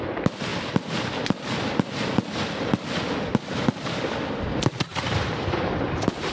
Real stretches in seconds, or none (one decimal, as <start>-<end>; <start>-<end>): 0.0-6.3